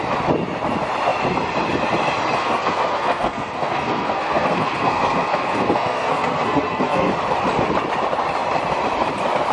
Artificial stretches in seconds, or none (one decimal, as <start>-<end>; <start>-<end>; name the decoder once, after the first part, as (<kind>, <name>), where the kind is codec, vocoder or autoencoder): 2.4-7.1 (codec, SNAC)